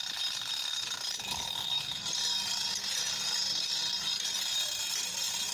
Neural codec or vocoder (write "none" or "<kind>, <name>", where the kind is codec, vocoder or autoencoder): none